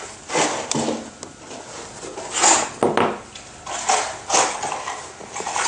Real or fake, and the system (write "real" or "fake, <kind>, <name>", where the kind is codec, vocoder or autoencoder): real